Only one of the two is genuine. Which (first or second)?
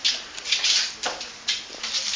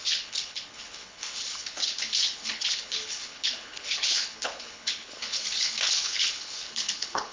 first